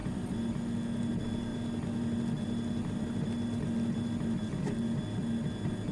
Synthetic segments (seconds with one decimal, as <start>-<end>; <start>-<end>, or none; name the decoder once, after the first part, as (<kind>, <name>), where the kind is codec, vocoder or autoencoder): 0.0-0.5 (vocoder, BigVGAN v2); 1.5-4.3